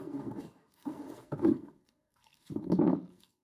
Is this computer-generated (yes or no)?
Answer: yes